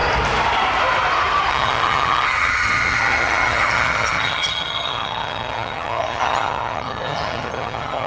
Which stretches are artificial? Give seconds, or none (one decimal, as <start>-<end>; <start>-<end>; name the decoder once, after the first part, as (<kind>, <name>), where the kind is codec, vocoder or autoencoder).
1.5-8.1 (vocoder, HiFi-GAN)